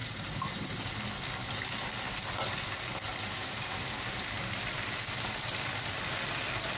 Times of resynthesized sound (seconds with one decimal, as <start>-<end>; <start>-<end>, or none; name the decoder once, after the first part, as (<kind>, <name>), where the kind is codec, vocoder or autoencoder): 0.0-0.9 (vocoder, BigVGAN v2)